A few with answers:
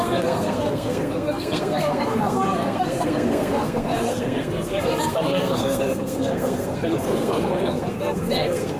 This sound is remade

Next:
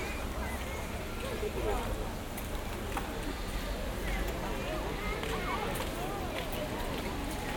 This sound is recorded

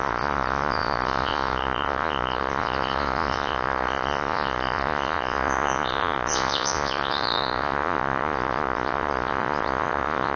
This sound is remade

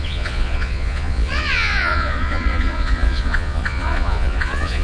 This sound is remade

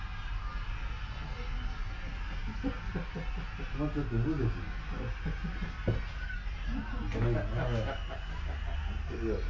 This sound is recorded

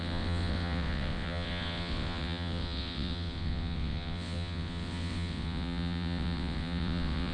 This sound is remade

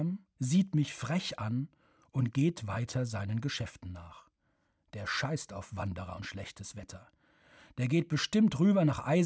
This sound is recorded